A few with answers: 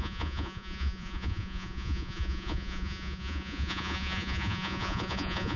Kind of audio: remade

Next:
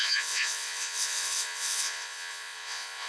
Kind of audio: remade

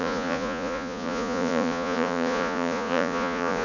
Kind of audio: remade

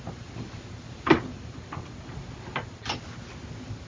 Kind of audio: recorded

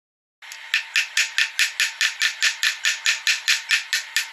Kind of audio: recorded